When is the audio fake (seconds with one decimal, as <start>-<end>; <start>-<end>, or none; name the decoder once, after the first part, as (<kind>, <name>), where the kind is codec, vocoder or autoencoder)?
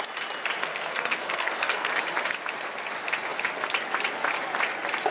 0.6-1.9 (codec, SNAC)